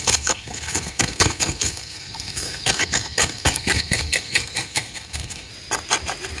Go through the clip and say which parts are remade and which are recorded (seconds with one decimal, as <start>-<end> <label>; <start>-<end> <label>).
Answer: 0.0-5.5 remade; 5.5-6.4 recorded